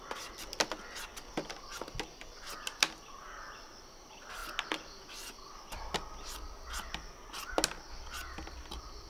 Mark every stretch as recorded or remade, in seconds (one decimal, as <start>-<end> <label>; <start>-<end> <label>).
0.0-9.1 recorded